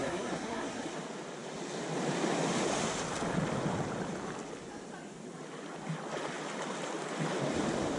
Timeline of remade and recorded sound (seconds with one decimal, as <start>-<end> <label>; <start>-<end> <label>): 0.0-0.9 remade; 0.9-8.0 recorded